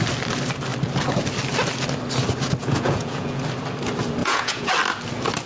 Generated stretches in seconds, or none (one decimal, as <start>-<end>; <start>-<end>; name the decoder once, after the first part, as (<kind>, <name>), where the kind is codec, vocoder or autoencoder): 2.6-3.4 (vocoder, Vocos); 4.2-4.7